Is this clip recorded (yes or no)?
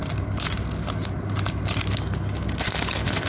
yes